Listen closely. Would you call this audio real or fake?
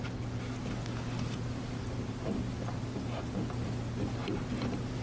real